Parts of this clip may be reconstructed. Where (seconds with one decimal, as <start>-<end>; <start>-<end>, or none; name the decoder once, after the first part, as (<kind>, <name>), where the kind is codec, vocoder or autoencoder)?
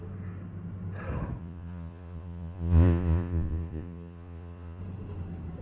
1.4-4.8 (vocoder, Vocos)